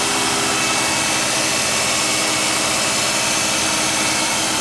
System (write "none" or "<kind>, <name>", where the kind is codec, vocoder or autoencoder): none